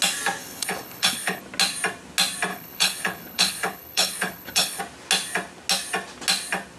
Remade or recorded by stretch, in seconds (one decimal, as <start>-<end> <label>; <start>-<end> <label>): 0.0-0.4 recorded; 0.4-1.4 remade; 1.4-2.5 recorded; 2.5-4.8 remade; 4.8-6.8 recorded